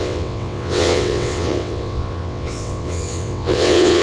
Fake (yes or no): yes